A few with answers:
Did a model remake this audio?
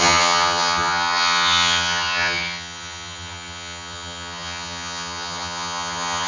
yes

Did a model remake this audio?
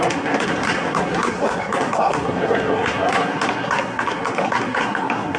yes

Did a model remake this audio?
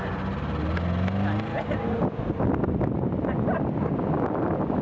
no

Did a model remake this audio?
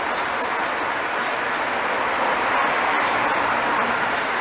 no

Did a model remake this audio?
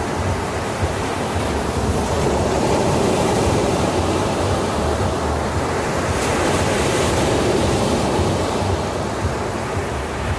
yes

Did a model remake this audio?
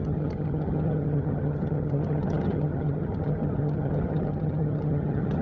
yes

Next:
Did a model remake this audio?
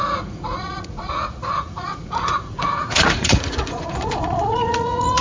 yes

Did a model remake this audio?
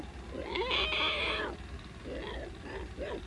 no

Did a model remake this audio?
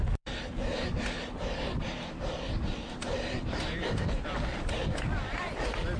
yes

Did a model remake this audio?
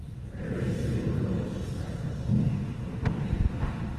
yes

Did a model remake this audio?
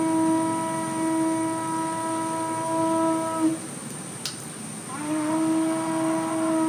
no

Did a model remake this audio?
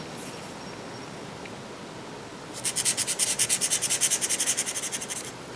no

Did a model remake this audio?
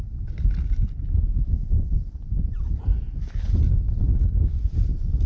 no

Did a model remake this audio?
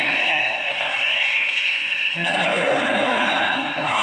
yes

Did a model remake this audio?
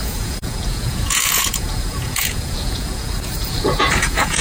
yes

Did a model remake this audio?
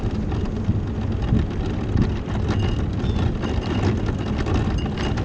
no